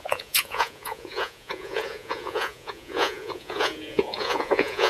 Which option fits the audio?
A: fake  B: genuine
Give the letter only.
A